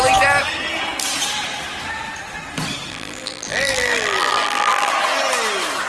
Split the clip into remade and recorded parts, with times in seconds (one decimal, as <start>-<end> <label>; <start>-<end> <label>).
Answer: 0.0-2.9 recorded; 2.9-4.9 remade; 4.9-5.9 recorded